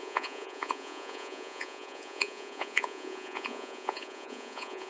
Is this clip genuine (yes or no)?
no